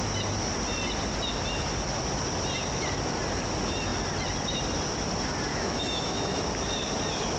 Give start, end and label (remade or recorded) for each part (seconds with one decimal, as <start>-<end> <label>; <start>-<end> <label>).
0.0-5.5 recorded; 5.5-6.4 remade; 6.4-7.4 recorded